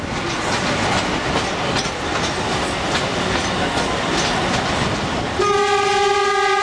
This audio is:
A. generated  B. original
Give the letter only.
B